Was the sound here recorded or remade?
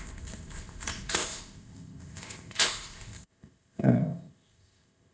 remade